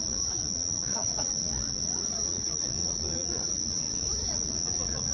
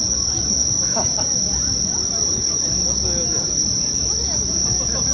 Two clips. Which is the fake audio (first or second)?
first